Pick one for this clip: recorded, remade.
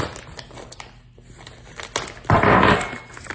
recorded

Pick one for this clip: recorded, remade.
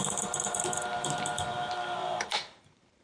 remade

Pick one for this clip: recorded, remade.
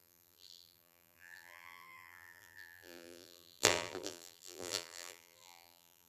remade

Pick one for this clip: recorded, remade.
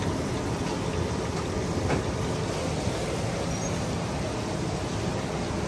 recorded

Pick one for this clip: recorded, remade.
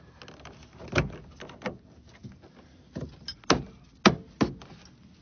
recorded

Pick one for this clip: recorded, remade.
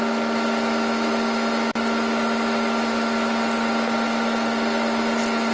recorded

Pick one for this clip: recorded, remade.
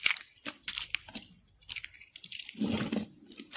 remade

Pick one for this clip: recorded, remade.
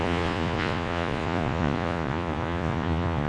remade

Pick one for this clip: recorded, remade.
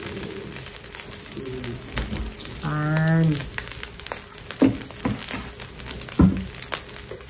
recorded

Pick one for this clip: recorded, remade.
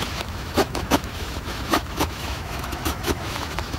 remade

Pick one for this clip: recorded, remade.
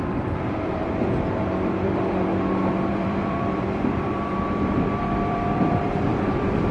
remade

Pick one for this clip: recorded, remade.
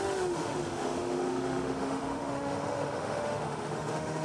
remade